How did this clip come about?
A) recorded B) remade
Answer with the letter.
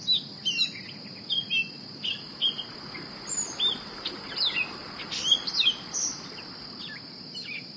A